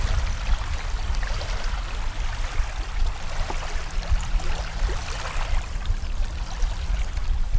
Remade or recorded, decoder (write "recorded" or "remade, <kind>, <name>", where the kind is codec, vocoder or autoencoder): recorded